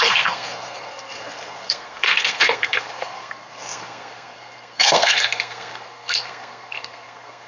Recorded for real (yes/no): no